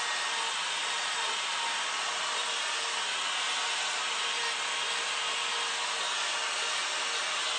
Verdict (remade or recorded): recorded